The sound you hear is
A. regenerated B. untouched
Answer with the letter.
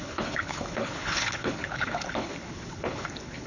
A